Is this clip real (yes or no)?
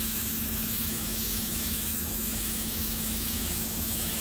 no